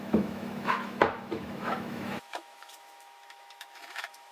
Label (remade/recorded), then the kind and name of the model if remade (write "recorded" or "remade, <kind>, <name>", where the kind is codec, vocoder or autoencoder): remade, autoencoder, DAC-VAE